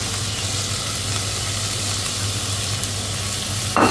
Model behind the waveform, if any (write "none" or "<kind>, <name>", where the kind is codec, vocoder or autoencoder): none